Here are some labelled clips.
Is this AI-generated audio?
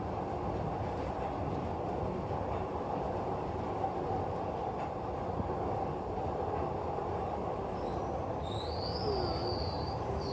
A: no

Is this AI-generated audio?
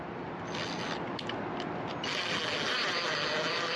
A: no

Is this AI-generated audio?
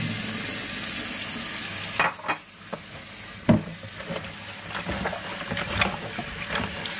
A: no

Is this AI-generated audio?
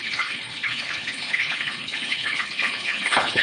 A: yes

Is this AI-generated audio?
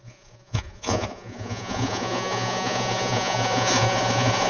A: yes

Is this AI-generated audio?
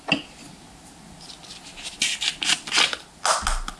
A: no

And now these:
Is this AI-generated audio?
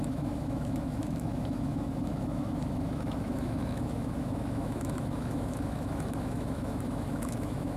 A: yes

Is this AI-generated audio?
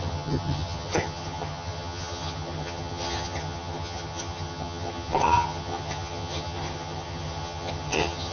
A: yes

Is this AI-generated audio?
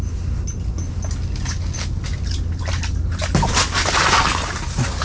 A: no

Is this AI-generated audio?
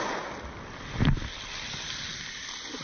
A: no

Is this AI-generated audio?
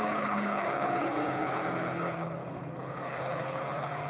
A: yes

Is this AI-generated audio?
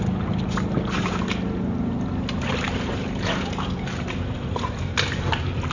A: no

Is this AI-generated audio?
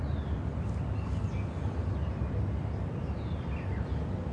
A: no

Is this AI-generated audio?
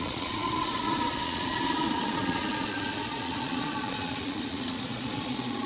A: yes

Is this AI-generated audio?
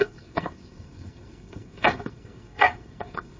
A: yes